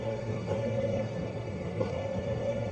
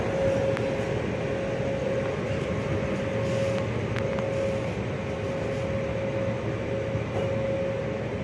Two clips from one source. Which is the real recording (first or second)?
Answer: second